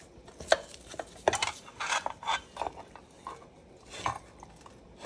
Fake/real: real